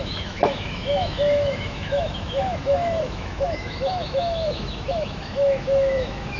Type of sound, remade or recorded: remade